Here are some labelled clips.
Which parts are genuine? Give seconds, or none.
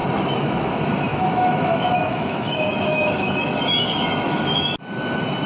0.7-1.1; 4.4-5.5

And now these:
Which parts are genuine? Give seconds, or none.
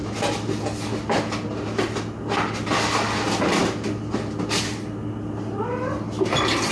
0.0-6.7